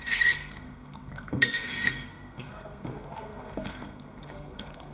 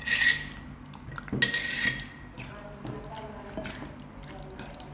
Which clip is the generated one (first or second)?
first